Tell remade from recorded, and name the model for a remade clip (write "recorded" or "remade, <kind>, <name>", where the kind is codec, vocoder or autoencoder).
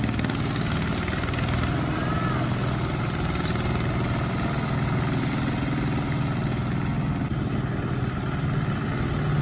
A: recorded